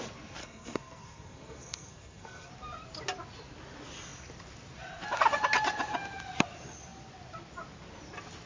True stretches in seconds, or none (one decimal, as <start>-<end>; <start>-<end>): 0.0-0.4; 2.5-8.5